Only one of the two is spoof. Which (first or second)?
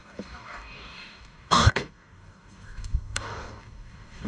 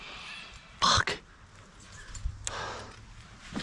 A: first